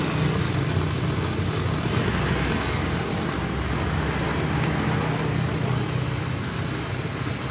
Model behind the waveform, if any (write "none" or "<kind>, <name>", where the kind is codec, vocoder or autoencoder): none